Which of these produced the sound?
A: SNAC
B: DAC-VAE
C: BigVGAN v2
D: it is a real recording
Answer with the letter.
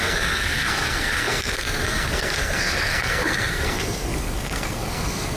A